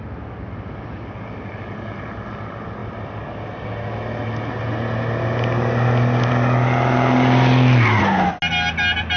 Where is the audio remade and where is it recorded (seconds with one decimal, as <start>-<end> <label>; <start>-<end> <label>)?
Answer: 0.0-9.2 recorded